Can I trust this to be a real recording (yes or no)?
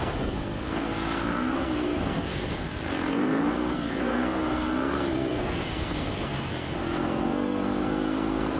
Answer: no